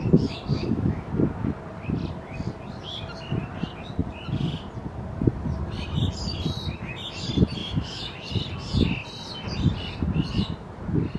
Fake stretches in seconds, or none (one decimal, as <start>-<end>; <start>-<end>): 0.5-1.1; 7.6-8.3